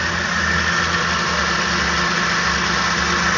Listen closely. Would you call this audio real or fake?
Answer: real